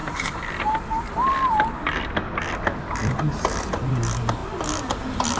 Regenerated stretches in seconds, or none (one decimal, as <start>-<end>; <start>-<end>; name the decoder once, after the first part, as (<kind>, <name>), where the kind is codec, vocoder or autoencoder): 0.0-2.3 (vocoder, BigVGAN v2); 3.0-3.9; 4.4-5.4